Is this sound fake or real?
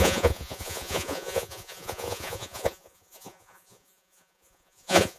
fake